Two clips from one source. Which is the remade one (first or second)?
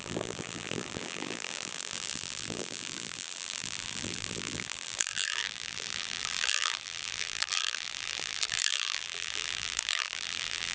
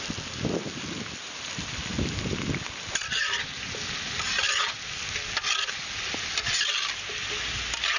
first